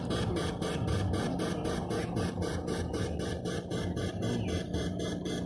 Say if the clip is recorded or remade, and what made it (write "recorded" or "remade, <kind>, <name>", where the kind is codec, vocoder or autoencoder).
recorded